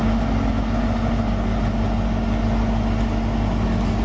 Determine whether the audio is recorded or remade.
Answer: recorded